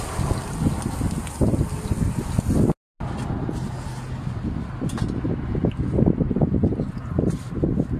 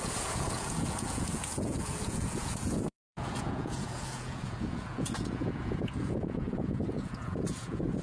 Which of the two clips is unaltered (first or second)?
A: first